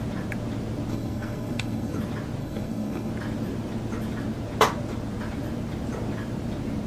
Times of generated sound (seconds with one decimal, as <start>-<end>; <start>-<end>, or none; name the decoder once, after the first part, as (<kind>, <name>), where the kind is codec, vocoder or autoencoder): 0.9-2.0 (codec, SNAC); 2.4-3.1